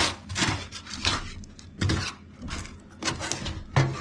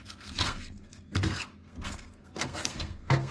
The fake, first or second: second